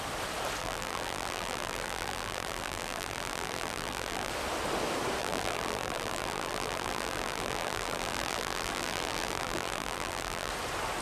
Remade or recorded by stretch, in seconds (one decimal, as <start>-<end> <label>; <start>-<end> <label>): 0.0-0.6 recorded; 0.6-4.3 remade; 4.3-5.2 recorded; 5.2-10.5 remade; 10.5-11.0 recorded